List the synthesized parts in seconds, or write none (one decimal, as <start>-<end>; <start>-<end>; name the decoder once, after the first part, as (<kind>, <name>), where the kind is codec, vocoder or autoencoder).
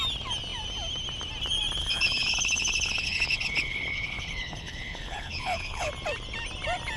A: 1.8-5.9 (codec, HILCodec)